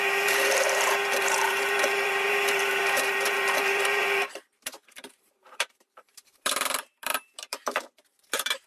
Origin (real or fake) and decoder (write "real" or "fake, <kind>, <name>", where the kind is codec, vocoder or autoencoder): fake, vocoder, BigVGAN v2